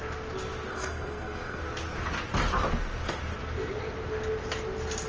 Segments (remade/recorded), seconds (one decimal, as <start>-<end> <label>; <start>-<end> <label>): 0.0-0.7 recorded; 0.7-1.6 remade; 1.6-5.1 recorded